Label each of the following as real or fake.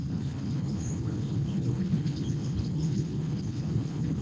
fake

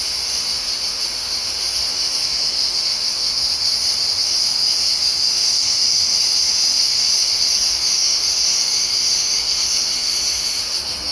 fake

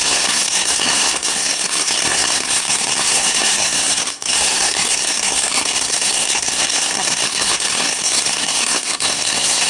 fake